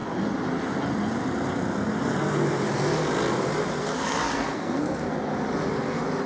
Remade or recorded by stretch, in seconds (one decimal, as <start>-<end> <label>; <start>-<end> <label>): 0.0-3.8 recorded; 3.8-5.3 remade; 5.3-6.3 recorded